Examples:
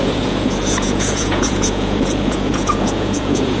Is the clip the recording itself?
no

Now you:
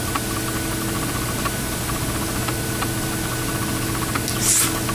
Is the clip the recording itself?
yes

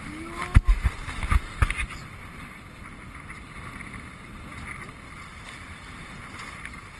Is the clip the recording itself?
yes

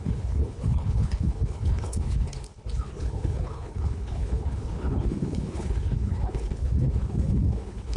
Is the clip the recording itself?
no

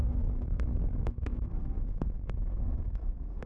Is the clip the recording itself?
no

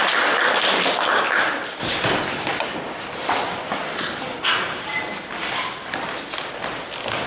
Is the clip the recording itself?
no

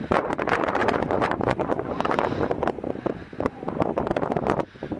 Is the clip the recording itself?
no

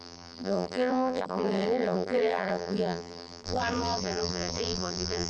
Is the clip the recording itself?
no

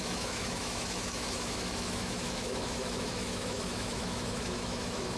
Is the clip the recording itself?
no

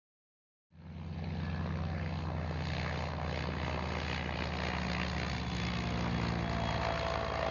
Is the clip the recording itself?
yes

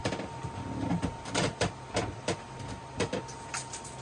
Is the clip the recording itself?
yes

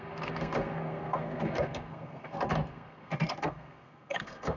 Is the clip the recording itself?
no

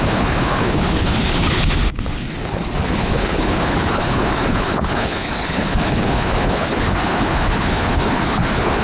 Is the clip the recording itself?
no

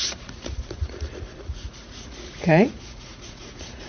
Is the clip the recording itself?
no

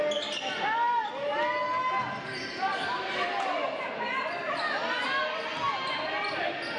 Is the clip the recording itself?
yes